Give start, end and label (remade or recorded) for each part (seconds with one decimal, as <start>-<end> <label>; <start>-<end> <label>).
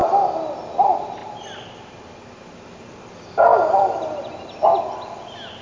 0.0-1.2 recorded; 1.2-1.9 remade; 1.9-5.6 recorded